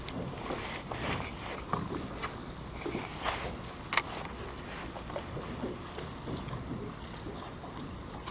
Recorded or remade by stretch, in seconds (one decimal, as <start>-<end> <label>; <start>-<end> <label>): 0.0-8.3 recorded